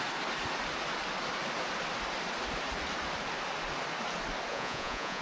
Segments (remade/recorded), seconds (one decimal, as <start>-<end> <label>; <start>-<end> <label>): 0.0-4.5 recorded; 4.5-5.2 remade